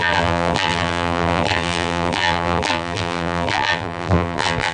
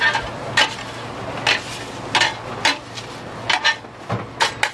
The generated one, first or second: first